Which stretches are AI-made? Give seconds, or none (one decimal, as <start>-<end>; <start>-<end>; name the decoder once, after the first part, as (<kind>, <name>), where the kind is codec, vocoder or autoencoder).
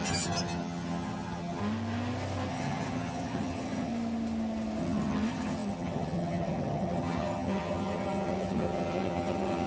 0.0-1.6 (vocoder, HiFi-GAN); 2.5-3.9; 4.8-9.7